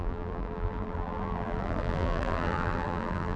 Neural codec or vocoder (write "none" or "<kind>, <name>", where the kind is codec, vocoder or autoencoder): vocoder, BigVGAN v2